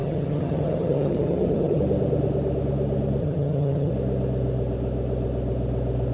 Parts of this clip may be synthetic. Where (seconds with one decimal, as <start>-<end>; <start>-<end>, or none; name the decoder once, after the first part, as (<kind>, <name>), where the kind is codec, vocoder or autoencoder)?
0.0-1.8 (vocoder, HiFi-GAN); 3.2-3.9